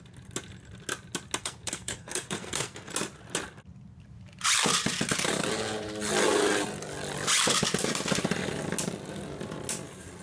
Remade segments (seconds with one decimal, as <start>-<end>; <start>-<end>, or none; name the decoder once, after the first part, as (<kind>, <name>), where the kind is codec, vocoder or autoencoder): 1.4-2.9 (codec, SNAC)